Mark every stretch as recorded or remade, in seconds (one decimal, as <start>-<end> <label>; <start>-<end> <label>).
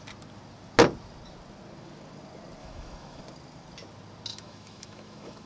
0.0-2.6 recorded; 2.6-3.2 remade; 3.2-4.3 recorded; 4.3-5.5 remade